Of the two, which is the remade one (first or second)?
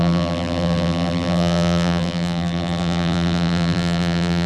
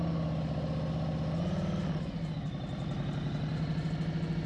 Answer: first